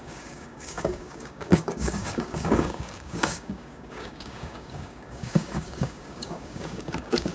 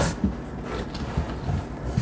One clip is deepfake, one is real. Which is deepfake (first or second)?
first